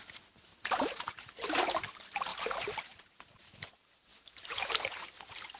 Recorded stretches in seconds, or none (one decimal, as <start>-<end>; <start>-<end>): none